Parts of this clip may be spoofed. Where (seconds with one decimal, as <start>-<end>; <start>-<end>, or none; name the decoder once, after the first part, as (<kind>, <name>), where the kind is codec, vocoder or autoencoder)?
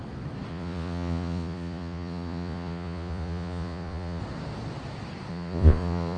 0.5-4.2 (vocoder, Vocos); 5.3-6.2